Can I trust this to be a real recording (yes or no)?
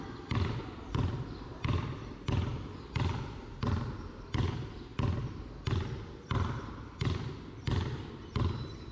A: yes